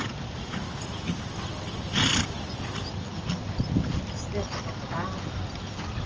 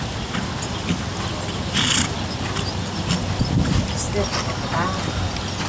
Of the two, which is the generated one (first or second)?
first